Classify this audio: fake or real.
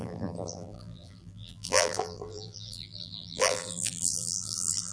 fake